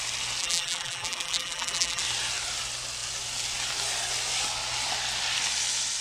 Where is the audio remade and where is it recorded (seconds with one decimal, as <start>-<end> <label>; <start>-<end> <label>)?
0.0-0.4 recorded; 0.4-2.0 remade; 2.0-6.0 recorded